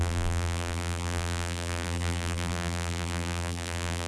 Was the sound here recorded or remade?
remade